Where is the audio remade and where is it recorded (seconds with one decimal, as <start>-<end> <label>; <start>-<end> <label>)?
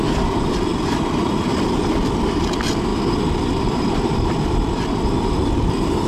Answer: 0.0-0.7 recorded; 0.7-1.7 remade; 1.7-2.9 recorded; 2.9-6.1 remade